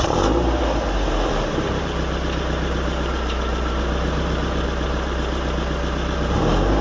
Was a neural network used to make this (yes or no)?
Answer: yes